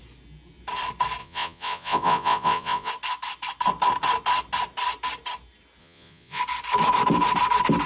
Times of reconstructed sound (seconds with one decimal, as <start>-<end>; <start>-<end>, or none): 1.2-2.9; 5.8-6.4